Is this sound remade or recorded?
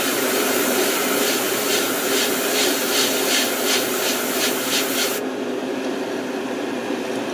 recorded